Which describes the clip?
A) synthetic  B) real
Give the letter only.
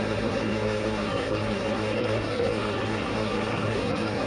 A